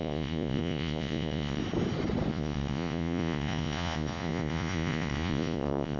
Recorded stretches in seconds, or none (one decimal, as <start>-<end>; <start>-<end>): 1.6-2.3